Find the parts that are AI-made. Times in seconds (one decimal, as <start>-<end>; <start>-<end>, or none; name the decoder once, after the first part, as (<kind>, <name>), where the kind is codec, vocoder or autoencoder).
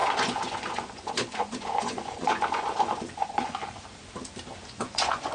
0.0-3.6 (vocoder, Vocos); 4.6-5.3